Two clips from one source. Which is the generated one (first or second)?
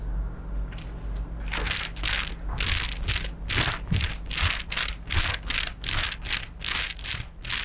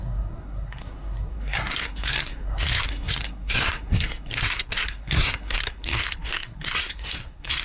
second